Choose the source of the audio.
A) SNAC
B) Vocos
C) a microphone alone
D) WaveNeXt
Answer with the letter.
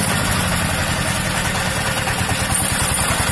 C